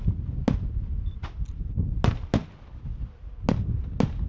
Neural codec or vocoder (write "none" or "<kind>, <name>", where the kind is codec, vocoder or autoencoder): none